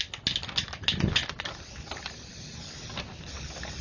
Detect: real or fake real